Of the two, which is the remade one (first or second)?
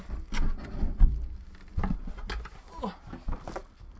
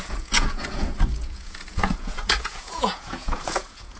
second